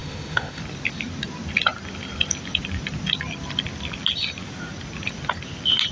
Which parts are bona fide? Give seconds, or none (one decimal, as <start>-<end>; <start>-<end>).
0.6-5.9